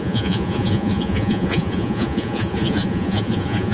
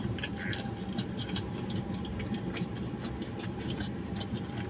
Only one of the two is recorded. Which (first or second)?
second